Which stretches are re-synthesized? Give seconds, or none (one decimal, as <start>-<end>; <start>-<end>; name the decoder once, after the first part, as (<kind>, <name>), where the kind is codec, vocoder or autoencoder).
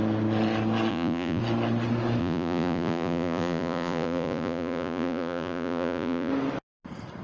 0.9-1.4 (vocoder, Vocos); 2.2-6.3